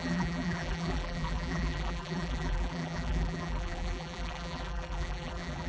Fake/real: fake